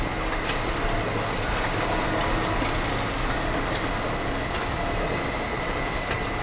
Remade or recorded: recorded